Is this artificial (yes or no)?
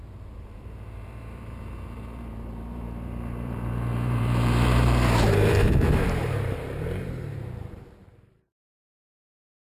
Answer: yes